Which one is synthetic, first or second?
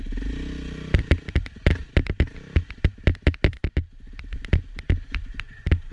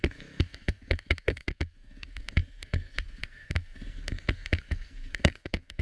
second